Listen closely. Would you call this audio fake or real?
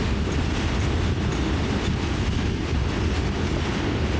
real